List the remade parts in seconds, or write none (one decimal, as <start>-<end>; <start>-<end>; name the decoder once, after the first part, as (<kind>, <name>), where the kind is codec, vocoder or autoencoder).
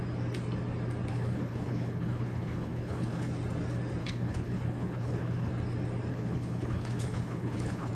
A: 1.1-3.3 (codec, HILCodec); 4.0-5.5; 6.1-7.9